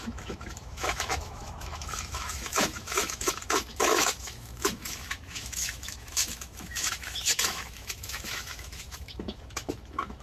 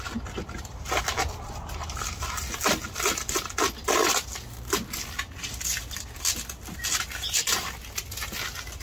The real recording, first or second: second